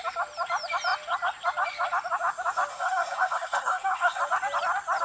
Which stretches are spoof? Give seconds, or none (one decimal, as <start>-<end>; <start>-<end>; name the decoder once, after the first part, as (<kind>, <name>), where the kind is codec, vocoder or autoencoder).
2.7-4.2 (codec, SNAC)